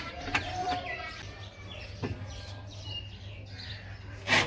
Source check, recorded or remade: recorded